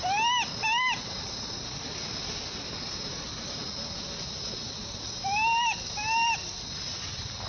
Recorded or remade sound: recorded